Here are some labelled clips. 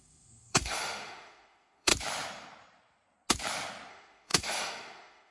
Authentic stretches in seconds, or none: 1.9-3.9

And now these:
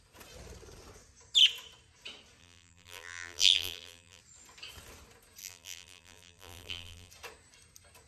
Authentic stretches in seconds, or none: 0.0-2.4; 4.2-5.4; 7.1-8.1

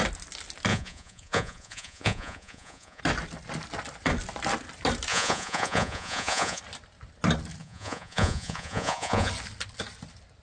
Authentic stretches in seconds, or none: 0.0-0.7; 3.0-5.1; 6.6-7.6; 9.3-10.4

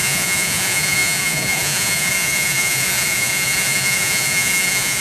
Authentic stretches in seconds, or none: none

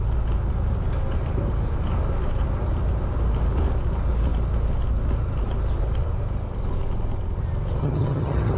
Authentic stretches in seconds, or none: 0.0-7.8

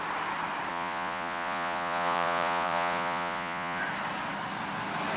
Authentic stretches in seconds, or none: 0.0-0.7; 3.8-5.2

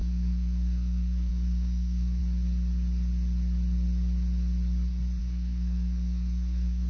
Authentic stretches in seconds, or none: 2.2-5.2

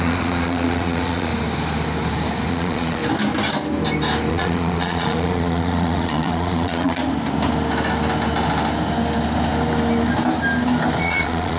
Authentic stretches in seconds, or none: 1.3-2.5; 3.0-4.3; 7.0-11.0